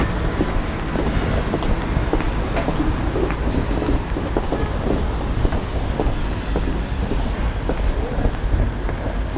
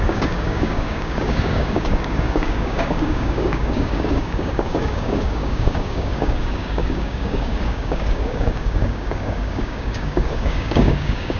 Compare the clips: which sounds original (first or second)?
first